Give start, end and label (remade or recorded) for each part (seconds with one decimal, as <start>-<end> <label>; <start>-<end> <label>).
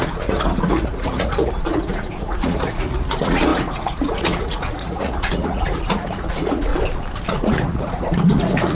0.0-6.7 remade; 6.7-7.3 recorded; 7.3-8.7 remade